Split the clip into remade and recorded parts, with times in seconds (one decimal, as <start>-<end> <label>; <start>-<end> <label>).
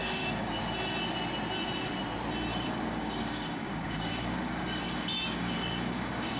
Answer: 0.0-0.6 remade; 0.6-2.5 recorded; 2.5-6.4 remade